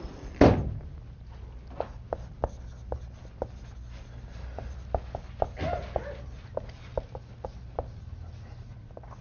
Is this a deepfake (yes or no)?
no